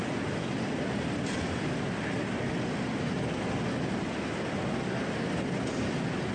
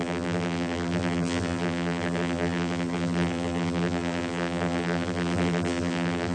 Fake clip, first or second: second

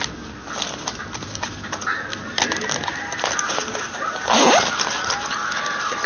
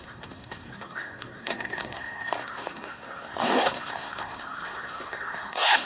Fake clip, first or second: second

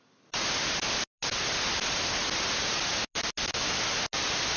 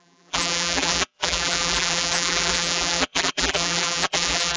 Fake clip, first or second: second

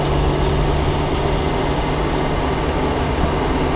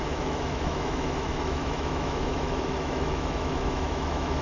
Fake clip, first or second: second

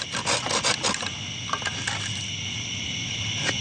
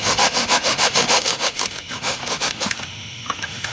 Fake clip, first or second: second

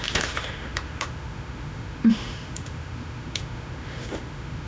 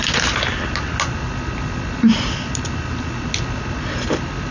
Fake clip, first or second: first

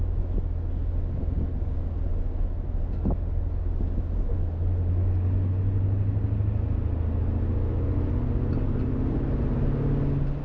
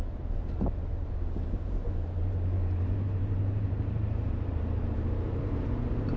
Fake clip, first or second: second